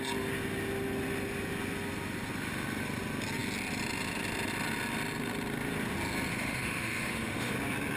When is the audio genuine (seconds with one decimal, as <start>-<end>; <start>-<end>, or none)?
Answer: 0.0-6.3; 7.5-8.0